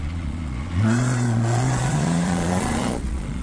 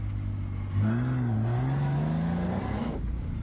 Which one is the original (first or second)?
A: second